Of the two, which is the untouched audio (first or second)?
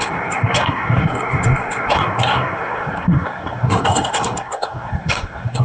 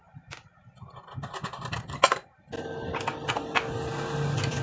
second